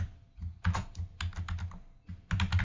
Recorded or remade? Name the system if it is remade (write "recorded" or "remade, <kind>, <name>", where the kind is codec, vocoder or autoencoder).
recorded